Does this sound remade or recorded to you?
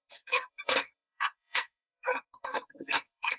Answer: remade